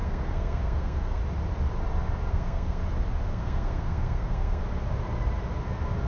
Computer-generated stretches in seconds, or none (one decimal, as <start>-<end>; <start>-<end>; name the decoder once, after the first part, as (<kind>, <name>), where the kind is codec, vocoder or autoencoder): 0.0-1.2 (codec, SNAC); 2.3-2.8; 3.3-4.6